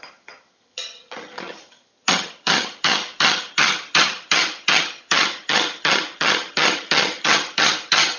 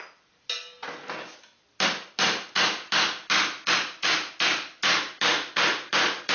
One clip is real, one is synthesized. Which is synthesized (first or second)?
first